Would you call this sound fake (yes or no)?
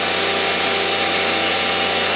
no